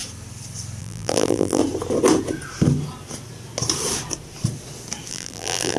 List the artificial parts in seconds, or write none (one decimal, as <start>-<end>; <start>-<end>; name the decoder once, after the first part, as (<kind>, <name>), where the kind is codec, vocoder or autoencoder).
0.8-1.6 (vocoder, BigVGAN v2); 5.1-5.8